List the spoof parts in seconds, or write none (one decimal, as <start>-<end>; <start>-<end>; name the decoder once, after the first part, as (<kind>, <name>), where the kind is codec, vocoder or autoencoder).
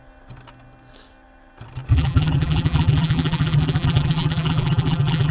1.9-5.3 (vocoder, BigVGAN v2)